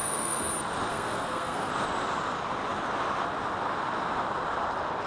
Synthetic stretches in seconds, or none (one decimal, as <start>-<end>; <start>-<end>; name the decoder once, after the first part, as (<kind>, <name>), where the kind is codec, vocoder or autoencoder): 0.0-0.5 (codec, SNAC); 0.9-1.7